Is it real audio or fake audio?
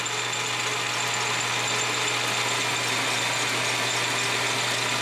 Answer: real